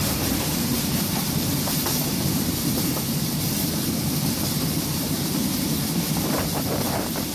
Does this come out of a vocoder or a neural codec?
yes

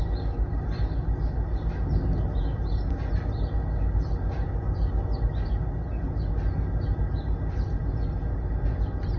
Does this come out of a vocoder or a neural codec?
no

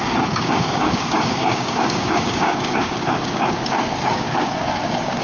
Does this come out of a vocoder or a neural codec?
yes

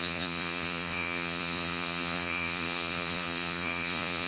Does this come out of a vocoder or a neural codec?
yes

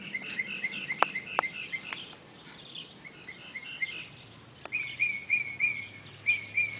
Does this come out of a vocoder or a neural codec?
no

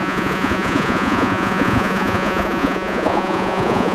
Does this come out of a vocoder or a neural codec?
yes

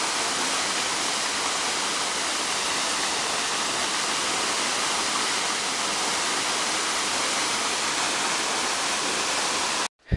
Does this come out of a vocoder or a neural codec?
no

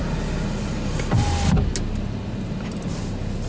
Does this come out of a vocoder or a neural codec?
no